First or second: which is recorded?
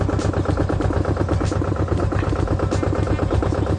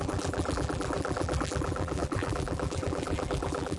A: first